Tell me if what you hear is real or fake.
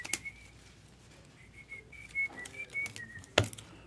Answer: real